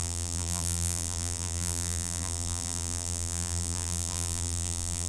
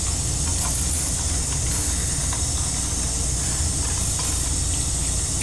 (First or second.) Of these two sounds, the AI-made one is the first